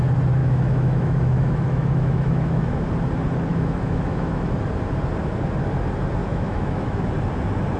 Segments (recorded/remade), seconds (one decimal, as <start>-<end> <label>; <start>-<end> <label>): 0.0-0.4 recorded; 0.4-2.9 remade; 2.9-3.5 recorded; 3.5-4.5 remade; 4.5-6.2 recorded; 6.2-7.1 remade; 7.1-7.8 recorded